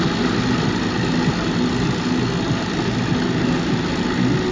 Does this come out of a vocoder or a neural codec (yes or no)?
no